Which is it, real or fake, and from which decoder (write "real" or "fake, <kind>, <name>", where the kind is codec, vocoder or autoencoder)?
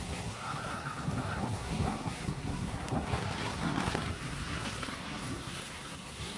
fake, codec, SNAC